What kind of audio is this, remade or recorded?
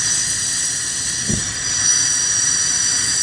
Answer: recorded